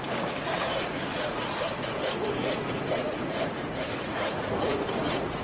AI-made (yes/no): yes